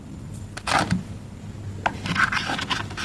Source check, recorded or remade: recorded